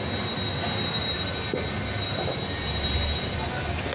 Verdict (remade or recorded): recorded